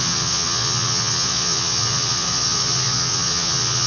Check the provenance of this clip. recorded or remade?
remade